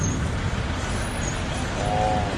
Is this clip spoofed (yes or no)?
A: no